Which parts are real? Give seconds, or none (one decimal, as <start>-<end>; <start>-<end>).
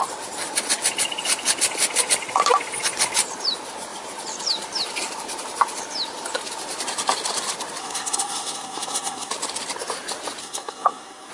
0.0-7.8; 9.3-10.4